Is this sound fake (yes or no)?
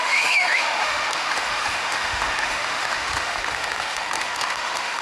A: yes